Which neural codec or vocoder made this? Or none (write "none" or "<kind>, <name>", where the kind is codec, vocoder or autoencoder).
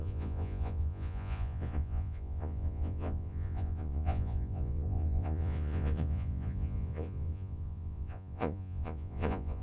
vocoder, Vocos